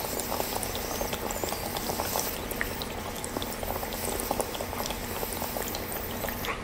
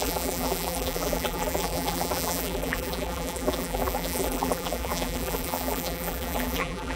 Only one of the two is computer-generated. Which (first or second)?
second